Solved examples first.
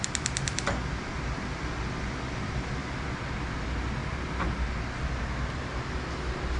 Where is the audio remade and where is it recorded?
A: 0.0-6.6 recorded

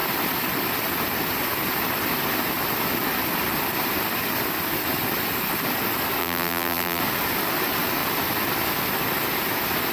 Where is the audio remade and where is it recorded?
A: 0.0-6.2 recorded; 6.2-7.0 remade; 7.0-9.9 recorded

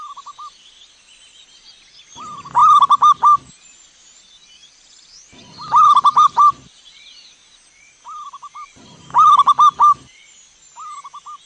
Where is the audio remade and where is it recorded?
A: 0.0-4.0 recorded; 4.0-8.8 remade; 8.8-11.5 recorded

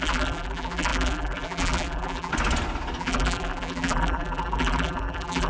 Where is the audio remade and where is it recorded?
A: 0.0-2.3 remade; 2.3-3.0 recorded; 3.0-5.5 remade

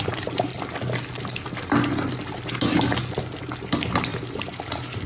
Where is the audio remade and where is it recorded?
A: 0.0-0.5 remade; 0.5-3.6 recorded; 3.6-5.1 remade

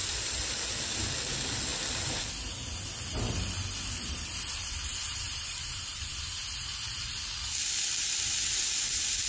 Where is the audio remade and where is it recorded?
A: 0.0-0.8 remade; 0.8-4.9 recorded; 4.9-6.1 remade; 6.1-9.3 recorded